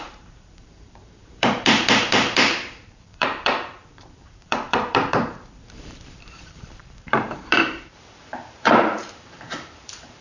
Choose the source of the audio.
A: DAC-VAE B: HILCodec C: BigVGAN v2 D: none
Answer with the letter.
C